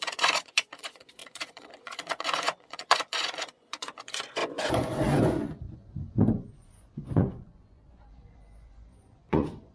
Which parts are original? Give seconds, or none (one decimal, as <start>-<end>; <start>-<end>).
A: none

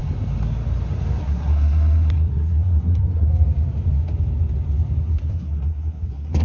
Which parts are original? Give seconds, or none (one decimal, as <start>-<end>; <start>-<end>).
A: 0.0-1.2; 3.3-5.3